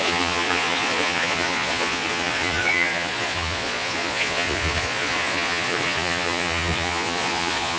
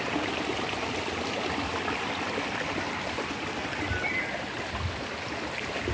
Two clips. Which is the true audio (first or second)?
second